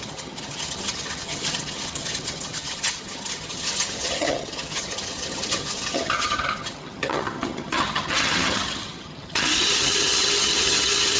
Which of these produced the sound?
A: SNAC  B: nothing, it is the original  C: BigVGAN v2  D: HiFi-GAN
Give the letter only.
D